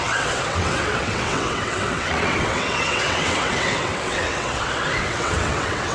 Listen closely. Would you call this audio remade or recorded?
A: remade